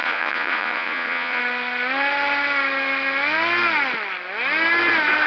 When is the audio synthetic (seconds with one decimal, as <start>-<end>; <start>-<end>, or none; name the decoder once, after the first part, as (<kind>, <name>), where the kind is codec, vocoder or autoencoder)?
0.0-1.4 (vocoder, Vocos)